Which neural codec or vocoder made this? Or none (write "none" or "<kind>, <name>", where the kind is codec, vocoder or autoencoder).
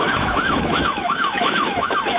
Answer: autoencoder, DAC-VAE